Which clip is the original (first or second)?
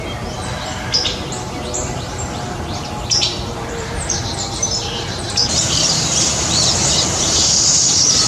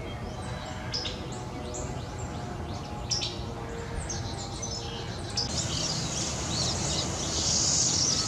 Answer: second